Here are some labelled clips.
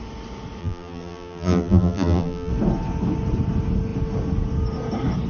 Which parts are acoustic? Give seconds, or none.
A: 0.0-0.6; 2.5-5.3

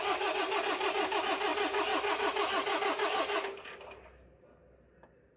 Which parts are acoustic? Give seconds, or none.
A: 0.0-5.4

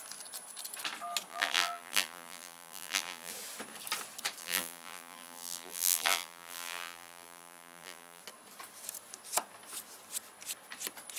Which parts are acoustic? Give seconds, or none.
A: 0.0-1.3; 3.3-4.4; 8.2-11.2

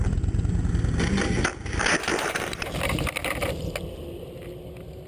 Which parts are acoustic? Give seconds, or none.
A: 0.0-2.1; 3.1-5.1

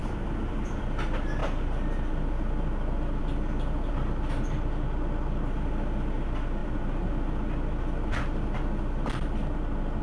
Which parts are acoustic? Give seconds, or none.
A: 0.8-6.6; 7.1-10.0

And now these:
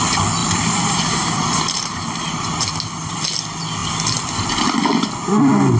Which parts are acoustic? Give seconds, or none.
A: 0.0-0.4; 3.1-5.8